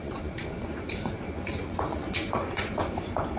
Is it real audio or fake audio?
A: fake